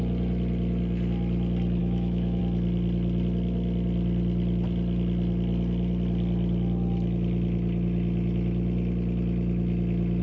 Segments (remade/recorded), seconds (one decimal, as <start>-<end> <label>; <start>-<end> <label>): 0.0-1.8 recorded; 1.8-2.4 remade; 2.4-10.2 recorded